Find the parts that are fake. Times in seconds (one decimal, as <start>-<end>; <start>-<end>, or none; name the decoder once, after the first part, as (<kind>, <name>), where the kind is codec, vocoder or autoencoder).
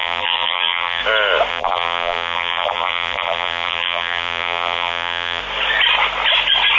0.0-1.0 (vocoder, BigVGAN v2); 1.5-5.4